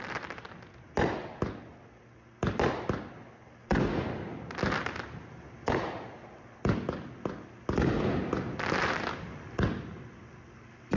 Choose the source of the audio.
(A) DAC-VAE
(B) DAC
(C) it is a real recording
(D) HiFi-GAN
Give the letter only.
C